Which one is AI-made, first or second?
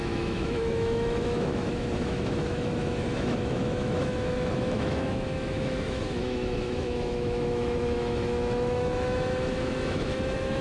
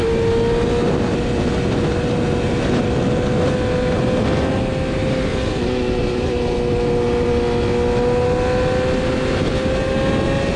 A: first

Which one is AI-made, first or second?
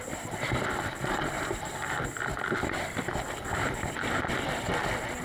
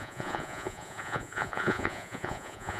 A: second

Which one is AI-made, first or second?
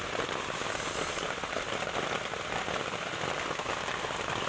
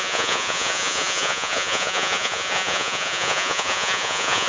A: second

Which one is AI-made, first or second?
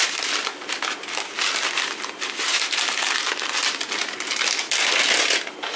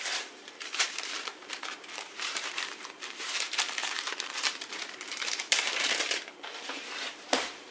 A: second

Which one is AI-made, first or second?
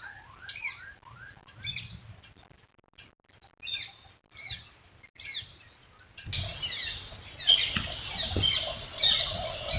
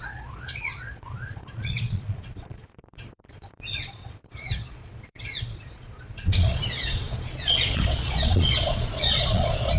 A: second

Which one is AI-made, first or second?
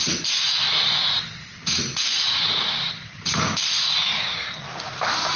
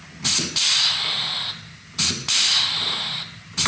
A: first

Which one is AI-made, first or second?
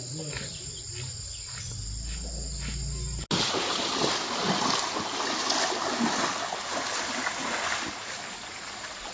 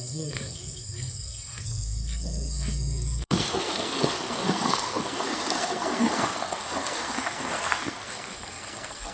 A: second